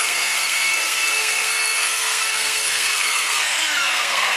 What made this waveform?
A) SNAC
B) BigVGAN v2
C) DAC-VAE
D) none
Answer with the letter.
A